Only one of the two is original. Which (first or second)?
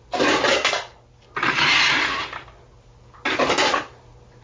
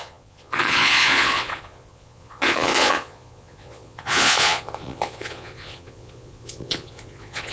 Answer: first